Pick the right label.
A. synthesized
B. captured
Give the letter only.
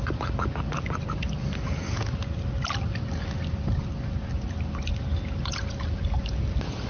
B